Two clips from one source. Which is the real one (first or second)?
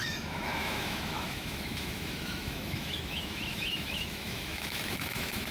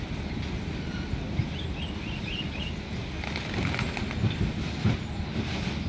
second